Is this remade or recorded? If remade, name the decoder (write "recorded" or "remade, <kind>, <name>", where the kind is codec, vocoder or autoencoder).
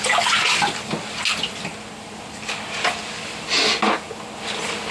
recorded